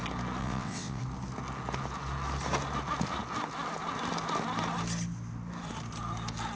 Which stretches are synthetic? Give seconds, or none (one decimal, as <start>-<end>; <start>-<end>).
0.4-1.0

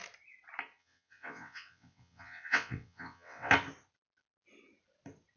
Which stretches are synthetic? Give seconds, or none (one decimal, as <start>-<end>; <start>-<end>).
0.8-3.5

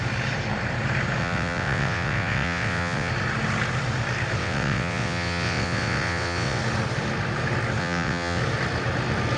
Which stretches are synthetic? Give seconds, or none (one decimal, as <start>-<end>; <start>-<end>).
1.2-3.1; 4.4-6.6; 7.8-8.4

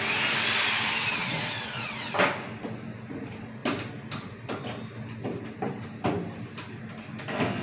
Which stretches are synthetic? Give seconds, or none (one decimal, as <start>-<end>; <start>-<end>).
1.1-2.1

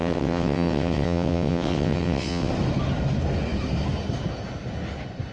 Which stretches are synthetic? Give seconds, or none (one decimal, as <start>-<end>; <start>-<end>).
0.0-2.5

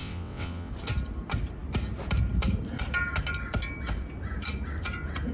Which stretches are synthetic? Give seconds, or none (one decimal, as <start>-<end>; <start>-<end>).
0.0-0.7